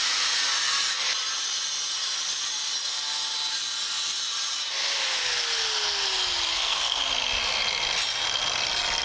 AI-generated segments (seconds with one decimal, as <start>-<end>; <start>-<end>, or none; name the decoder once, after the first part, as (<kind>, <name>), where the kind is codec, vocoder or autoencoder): 6.5-7.0 (codec, SNAC)